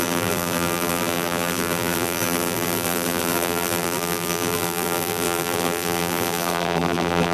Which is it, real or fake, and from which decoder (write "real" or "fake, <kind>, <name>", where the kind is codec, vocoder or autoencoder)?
fake, vocoder, BigVGAN v2